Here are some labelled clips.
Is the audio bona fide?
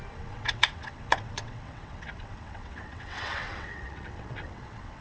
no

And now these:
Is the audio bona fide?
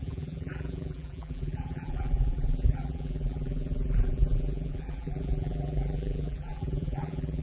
no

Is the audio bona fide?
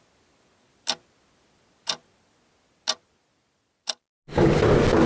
yes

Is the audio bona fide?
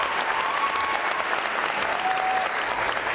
yes